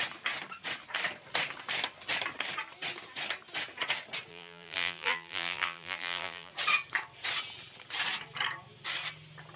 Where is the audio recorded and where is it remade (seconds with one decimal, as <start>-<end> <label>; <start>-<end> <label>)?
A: 0.0-4.3 recorded; 4.3-6.5 remade; 6.5-9.6 recorded